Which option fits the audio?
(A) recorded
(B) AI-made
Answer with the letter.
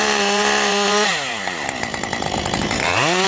B